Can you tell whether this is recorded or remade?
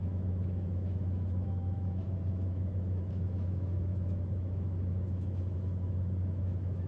remade